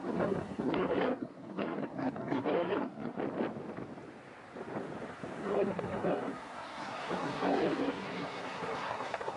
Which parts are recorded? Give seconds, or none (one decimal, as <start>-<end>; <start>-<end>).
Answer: 3.2-5.4